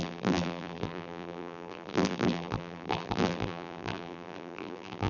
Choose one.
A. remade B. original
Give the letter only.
A